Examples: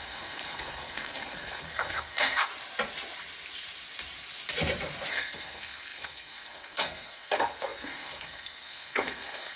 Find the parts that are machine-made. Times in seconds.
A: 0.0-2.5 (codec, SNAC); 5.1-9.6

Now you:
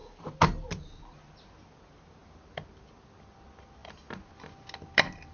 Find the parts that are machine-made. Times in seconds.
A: none

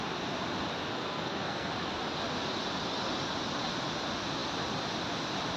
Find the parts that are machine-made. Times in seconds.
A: 0.9-1.7 (codec, SNAC)

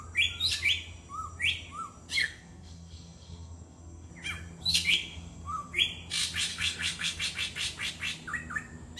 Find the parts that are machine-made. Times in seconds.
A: 2.2-4.1 (codec, SNAC); 4.6-5.8; 6.5-7.2

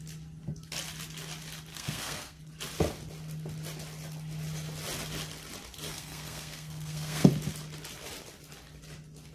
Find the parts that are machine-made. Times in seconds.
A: 1.7-2.4 (codec, SNAC); 5.9-7.3

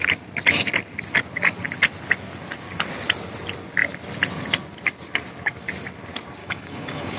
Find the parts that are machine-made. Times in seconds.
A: 6.4-7.2 (codec, DAC)